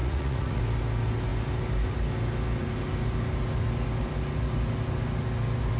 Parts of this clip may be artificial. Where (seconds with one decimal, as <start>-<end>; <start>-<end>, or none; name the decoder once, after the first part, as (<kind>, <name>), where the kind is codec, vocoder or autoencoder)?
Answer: 0.0-0.6 (vocoder, Vocos)